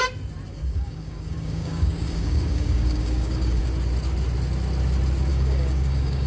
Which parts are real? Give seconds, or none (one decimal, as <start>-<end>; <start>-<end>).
0.0-0.5; 3.6-5.3